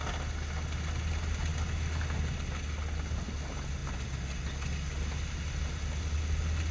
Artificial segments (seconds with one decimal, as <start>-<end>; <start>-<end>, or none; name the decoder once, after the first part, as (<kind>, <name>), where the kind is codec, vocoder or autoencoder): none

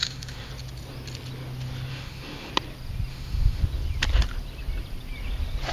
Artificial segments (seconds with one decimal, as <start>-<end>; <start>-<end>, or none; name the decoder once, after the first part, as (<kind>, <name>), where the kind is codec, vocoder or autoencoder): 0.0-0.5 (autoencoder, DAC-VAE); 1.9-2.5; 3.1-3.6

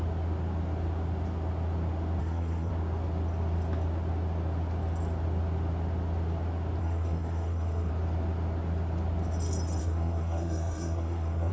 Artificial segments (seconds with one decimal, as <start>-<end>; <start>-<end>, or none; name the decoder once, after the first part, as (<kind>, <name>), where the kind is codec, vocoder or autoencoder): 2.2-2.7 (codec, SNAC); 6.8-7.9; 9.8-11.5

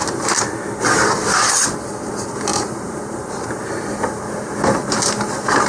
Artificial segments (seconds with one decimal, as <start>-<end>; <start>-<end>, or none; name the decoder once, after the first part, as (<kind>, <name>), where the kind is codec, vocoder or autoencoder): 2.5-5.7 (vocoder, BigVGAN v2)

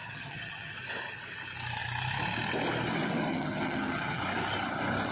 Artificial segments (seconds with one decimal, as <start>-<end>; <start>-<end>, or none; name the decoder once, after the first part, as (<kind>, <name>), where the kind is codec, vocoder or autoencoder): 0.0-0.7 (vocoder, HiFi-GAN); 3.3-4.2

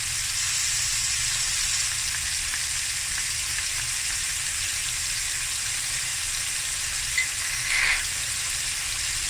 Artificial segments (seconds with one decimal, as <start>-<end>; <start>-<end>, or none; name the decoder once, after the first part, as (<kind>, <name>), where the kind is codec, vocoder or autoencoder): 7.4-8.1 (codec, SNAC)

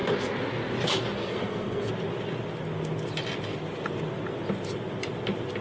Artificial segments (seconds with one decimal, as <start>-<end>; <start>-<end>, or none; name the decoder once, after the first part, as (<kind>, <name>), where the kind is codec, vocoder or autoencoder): 1.2-1.8 (codec, SNAC)

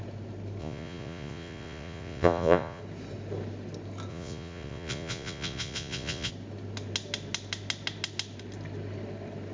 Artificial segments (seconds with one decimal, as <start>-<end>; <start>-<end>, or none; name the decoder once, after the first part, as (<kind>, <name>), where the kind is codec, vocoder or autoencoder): 0.6-2.8 (vocoder, Vocos); 4.1-6.3